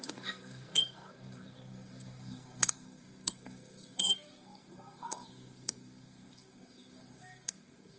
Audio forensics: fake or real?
fake